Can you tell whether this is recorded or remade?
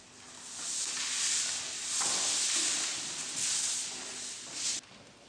recorded